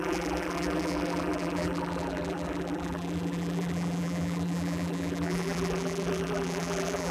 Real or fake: fake